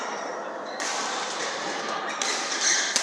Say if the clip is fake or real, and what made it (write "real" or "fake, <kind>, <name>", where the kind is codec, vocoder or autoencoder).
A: real